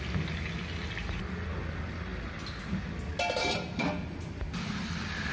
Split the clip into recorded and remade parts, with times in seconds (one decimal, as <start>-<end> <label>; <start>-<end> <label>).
0.0-5.3 recorded

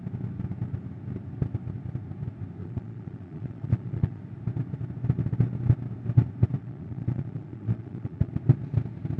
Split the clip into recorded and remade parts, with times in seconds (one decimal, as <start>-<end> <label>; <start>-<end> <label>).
0.0-2.6 recorded; 2.6-4.2 remade; 4.2-6.6 recorded; 6.6-8.3 remade; 8.3-9.2 recorded

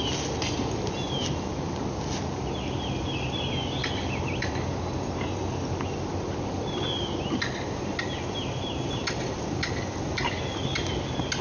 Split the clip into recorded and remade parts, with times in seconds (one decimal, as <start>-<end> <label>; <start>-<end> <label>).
0.0-11.4 recorded

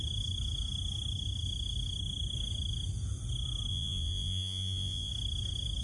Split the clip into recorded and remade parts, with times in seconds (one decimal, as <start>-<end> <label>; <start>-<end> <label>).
0.0-3.7 recorded; 3.7-5.1 remade; 5.1-5.8 recorded

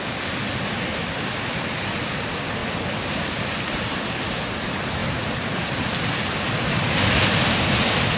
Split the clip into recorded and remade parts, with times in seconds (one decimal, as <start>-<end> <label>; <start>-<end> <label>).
0.0-8.2 recorded